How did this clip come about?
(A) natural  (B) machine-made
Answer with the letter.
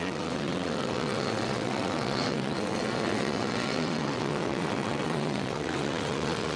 B